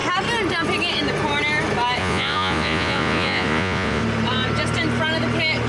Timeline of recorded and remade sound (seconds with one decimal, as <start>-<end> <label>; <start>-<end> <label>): 0.0-2.0 recorded; 2.0-4.0 remade; 4.0-5.7 recorded